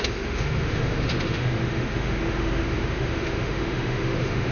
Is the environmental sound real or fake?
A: fake